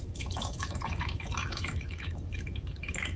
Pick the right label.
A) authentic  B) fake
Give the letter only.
B